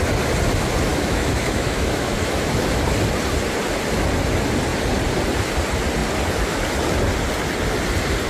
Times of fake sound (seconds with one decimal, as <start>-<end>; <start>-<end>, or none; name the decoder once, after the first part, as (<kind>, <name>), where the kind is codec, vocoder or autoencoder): 0.9-2.5 (autoencoder, DAC-VAE)